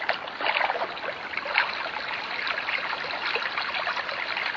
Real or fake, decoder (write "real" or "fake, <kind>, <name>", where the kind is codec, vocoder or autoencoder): real